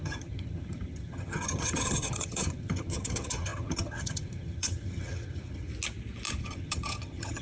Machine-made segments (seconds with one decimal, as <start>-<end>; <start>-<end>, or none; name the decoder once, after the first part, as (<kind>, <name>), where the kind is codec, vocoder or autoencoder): 0.0-5.7 (vocoder, HiFi-GAN); 6.4-7.4